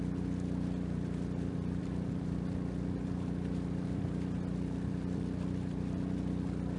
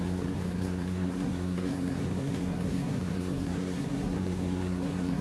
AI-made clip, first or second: second